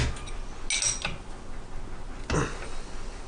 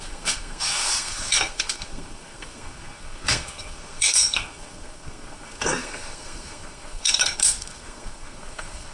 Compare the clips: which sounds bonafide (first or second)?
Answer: first